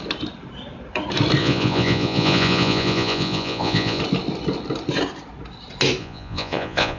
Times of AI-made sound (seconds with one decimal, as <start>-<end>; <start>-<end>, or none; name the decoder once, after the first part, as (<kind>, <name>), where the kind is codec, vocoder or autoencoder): 1.4-4.0 (vocoder, Vocos); 6.0-7.0